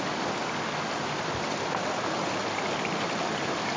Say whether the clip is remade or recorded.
recorded